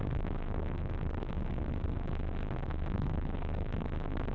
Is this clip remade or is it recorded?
remade